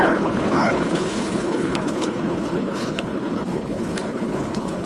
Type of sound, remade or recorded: remade